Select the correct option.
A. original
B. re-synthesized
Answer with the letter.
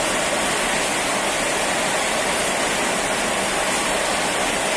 A